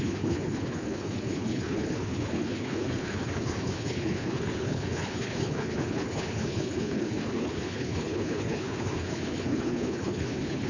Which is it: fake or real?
fake